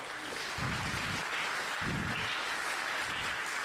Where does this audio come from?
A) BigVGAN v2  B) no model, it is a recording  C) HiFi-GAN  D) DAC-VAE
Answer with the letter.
B